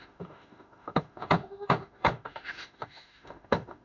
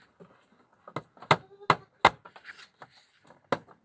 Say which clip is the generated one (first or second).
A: first